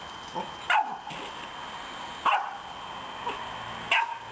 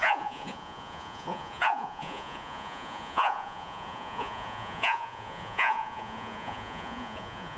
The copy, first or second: second